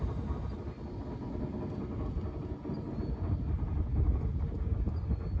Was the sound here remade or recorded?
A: recorded